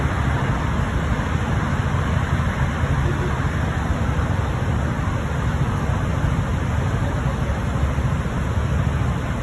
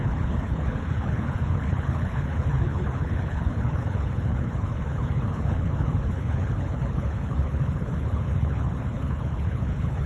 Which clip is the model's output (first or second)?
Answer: second